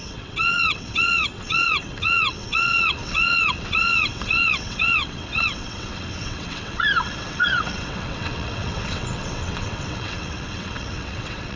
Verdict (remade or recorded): remade